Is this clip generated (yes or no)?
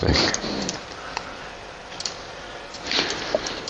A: yes